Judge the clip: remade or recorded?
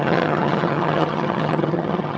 remade